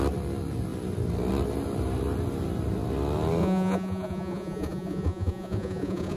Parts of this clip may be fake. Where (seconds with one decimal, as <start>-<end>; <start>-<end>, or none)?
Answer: 3.4-6.2